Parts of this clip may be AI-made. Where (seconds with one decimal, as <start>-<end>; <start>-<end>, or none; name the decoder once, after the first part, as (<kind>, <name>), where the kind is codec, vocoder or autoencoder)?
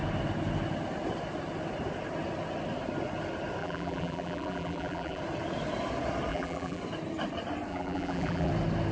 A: 3.6-5.2 (vocoder, BigVGAN v2); 6.3-6.8; 7.7-8.5